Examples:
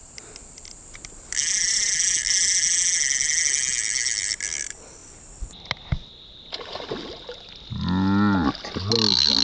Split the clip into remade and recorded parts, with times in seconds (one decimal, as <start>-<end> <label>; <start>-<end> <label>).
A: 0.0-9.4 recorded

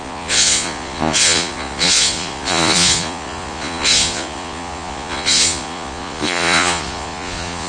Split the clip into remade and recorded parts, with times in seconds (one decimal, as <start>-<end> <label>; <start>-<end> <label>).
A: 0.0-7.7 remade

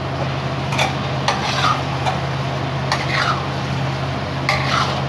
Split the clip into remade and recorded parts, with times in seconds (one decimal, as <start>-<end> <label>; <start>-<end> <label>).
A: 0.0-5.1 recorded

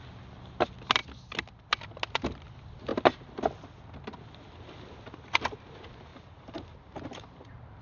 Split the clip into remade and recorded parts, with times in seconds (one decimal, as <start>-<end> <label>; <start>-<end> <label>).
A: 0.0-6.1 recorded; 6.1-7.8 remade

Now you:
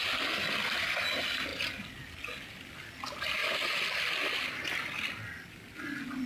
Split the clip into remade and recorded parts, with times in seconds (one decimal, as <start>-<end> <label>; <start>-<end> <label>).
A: 0.0-6.3 recorded